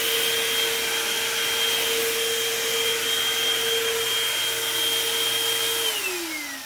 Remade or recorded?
recorded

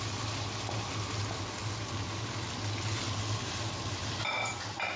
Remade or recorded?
recorded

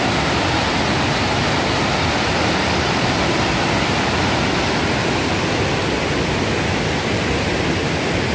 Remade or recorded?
recorded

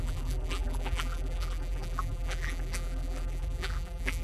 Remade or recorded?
remade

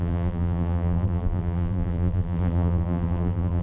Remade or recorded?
remade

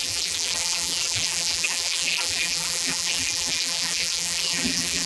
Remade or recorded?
remade